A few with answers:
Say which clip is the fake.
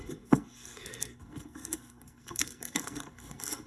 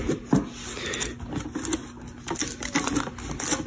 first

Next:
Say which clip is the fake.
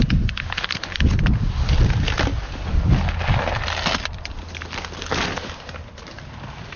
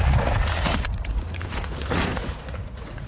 second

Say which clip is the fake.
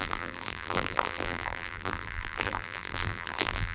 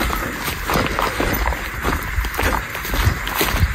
first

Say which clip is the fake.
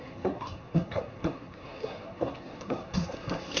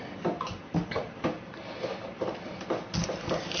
first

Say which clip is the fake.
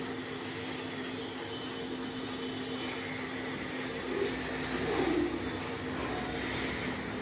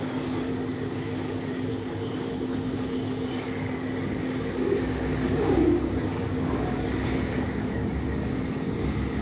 second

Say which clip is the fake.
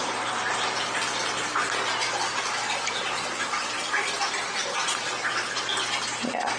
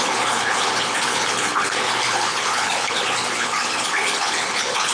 second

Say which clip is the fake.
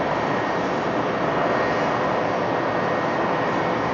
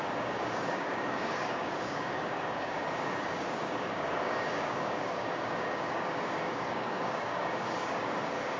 second